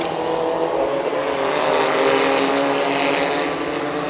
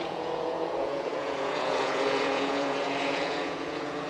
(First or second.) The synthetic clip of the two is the second